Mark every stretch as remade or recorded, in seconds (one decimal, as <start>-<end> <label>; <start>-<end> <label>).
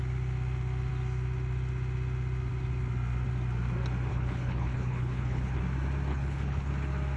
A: 0.0-4.1 recorded; 4.1-5.6 remade; 5.6-6.1 recorded; 6.1-6.7 remade; 6.7-7.2 recorded